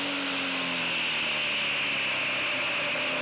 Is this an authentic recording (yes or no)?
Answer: yes